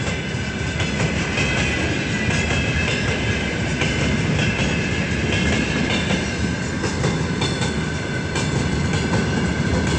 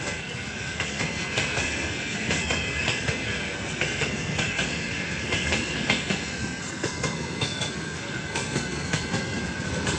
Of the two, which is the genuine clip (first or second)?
first